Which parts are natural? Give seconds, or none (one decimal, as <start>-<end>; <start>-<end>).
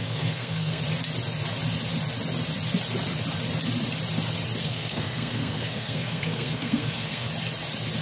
0.8-4.6; 7.3-8.0